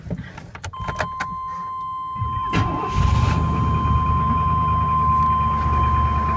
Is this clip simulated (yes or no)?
no